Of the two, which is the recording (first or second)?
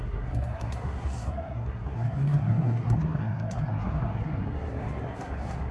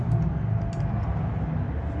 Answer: second